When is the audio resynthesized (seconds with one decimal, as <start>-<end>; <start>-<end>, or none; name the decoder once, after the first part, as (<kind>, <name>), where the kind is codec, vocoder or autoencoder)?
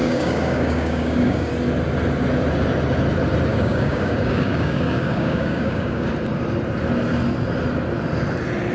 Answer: 0.0-1.5 (codec, DAC); 3.5-6.1